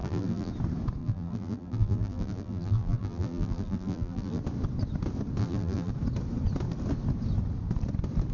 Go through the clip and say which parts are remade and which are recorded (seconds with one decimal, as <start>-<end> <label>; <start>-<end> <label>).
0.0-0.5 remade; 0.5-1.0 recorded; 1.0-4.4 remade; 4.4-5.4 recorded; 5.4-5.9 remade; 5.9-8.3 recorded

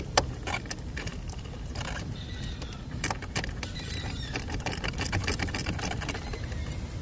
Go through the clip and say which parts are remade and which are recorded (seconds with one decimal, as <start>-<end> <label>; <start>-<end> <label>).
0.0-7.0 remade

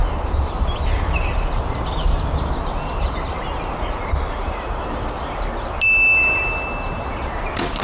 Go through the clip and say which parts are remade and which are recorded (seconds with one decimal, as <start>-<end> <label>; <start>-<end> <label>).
0.0-7.8 recorded

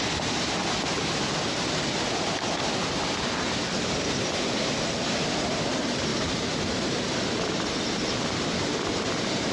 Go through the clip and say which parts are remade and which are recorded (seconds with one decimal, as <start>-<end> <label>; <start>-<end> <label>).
0.0-0.6 remade; 0.6-3.9 recorded; 3.9-9.5 remade